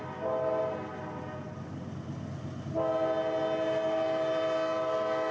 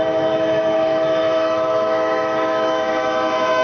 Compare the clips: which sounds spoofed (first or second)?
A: second